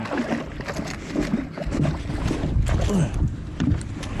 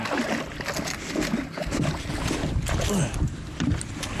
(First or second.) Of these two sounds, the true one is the first